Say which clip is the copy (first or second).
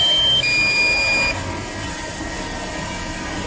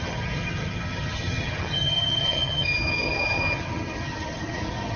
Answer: second